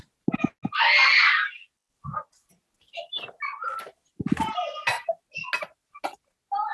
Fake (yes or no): no